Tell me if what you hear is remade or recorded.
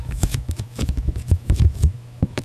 remade